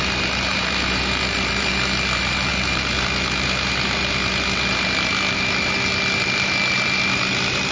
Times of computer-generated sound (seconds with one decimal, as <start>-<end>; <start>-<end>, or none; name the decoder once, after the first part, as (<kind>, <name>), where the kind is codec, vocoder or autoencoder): 0.5-1.7 (vocoder, BigVGAN v2); 2.5-3.7